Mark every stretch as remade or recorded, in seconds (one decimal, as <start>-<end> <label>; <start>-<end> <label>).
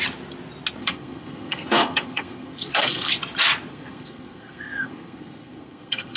0.0-0.8 recorded; 0.8-3.1 remade; 3.1-3.7 recorded; 3.7-6.2 remade